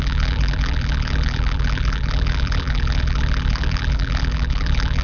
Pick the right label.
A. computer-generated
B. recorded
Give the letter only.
A